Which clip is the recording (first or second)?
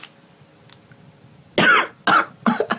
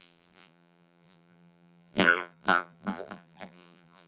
first